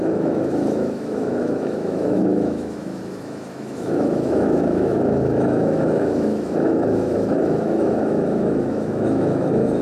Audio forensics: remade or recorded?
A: remade